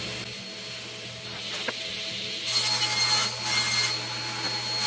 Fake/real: real